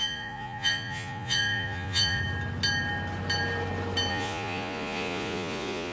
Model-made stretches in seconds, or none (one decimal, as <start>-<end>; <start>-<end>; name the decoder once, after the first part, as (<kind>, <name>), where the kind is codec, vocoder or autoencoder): 0.0-2.2 (vocoder, Vocos); 4.1-5.9